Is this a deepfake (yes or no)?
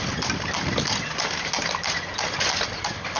no